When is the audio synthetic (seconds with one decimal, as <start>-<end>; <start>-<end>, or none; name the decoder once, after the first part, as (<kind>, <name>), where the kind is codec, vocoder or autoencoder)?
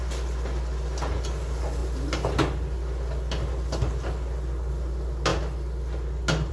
none